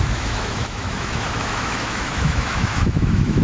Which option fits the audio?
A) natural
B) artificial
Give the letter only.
B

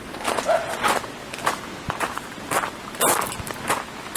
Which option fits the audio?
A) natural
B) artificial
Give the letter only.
A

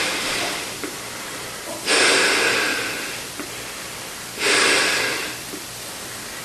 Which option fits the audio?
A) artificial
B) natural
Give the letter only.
A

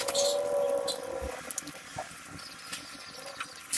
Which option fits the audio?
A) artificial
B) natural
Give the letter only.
B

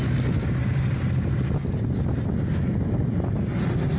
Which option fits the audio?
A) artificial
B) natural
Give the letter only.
B